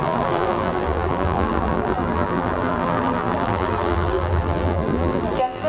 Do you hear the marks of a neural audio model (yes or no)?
yes